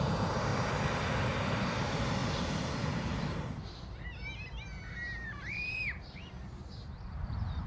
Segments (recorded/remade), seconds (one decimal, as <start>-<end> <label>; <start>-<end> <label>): 0.0-0.5 remade; 0.5-1.3 recorded; 1.3-7.7 remade